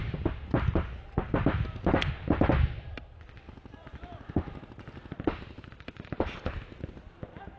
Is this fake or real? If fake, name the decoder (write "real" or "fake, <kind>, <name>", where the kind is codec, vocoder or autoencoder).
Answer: real